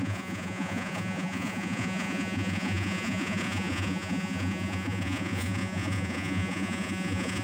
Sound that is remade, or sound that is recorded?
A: remade